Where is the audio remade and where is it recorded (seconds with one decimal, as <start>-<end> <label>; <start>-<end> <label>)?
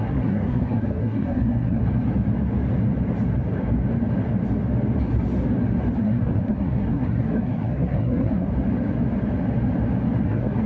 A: 0.0-1.8 remade; 1.8-6.0 recorded; 6.0-8.5 remade; 8.5-10.2 recorded; 10.2-10.7 remade